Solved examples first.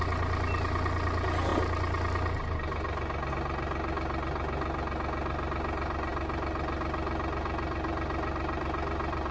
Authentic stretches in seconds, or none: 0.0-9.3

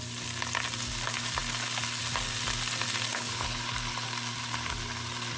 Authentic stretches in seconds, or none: 0.0-3.1; 3.6-5.4

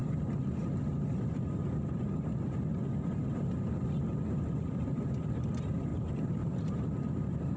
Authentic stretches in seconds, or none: 0.0-5.9; 6.8-7.6

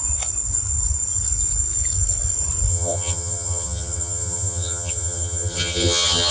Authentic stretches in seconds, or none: 0.0-2.7